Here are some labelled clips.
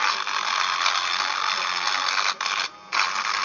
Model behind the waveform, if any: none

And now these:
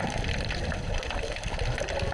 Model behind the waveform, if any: none